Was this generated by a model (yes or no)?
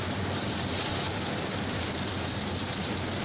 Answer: no